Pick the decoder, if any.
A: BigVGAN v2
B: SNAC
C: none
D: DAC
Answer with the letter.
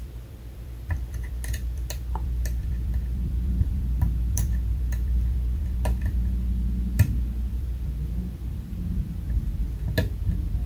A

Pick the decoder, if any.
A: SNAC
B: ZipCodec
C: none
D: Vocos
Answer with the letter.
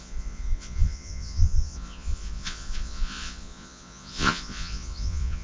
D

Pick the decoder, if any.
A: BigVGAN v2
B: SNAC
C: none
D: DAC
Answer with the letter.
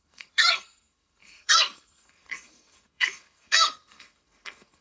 B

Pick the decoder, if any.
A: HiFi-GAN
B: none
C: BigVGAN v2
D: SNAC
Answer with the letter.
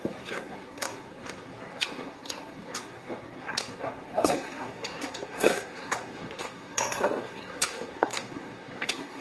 D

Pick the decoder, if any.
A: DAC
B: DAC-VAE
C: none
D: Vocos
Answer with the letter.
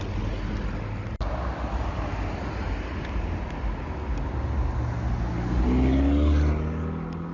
C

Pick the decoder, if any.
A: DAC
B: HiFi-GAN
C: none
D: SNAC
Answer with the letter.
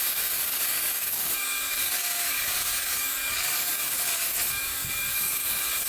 A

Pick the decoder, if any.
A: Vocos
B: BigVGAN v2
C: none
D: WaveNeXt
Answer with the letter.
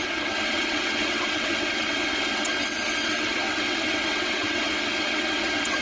D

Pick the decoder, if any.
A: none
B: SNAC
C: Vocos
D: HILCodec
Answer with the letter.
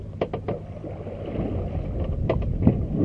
A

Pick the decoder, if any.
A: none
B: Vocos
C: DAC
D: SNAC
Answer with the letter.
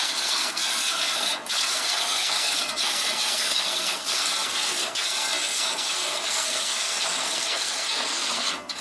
D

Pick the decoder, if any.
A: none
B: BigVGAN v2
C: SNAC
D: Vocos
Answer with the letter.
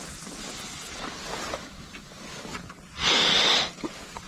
A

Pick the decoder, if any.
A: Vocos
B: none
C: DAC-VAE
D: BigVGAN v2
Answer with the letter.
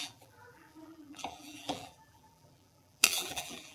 D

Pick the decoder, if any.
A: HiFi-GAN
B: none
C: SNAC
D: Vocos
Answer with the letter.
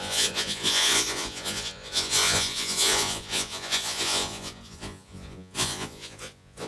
D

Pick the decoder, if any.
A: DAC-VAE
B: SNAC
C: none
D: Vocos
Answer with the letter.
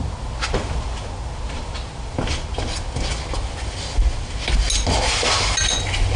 C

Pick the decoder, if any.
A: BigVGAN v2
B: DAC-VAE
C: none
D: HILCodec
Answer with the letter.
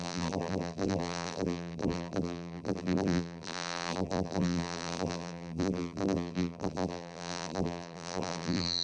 A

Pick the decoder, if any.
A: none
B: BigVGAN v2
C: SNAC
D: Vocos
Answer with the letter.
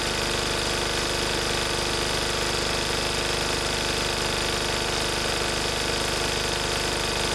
A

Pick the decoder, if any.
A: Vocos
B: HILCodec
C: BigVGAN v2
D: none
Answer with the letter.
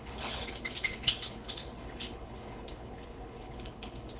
B